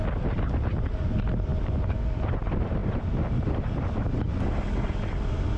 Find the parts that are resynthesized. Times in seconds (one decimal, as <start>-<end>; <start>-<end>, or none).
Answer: 1.5-2.2